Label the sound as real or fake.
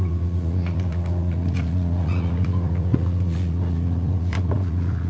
fake